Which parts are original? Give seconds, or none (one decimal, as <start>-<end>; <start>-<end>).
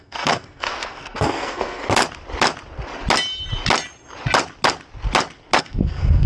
1.8-5.6